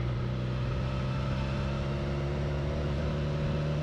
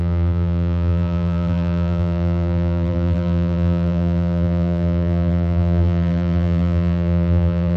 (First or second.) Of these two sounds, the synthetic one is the second